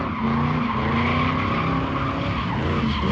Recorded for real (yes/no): yes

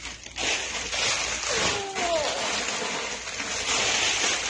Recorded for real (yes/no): yes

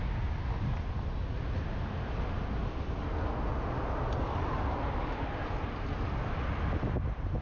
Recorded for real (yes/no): yes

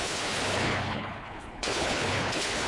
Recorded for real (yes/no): no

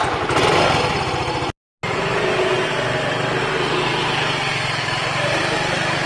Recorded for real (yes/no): yes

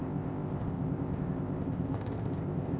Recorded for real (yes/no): no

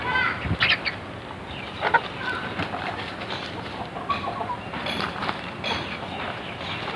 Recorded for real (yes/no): yes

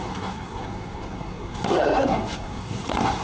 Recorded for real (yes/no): no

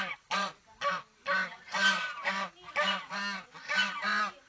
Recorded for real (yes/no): yes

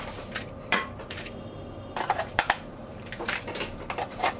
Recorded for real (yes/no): no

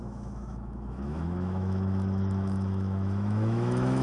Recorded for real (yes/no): no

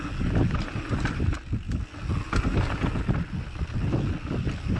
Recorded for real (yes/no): yes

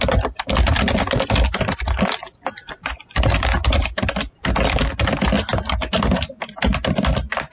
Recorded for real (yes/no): yes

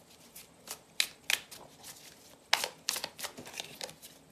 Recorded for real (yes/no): yes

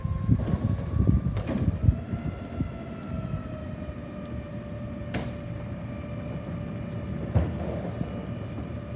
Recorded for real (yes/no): yes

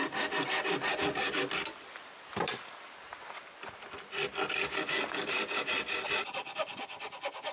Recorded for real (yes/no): yes